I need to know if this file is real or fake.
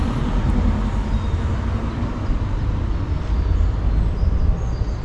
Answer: real